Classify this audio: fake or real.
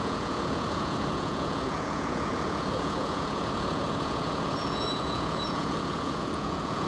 fake